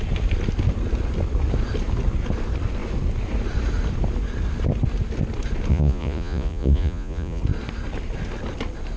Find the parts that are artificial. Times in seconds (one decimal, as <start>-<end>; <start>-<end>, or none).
5.7-7.4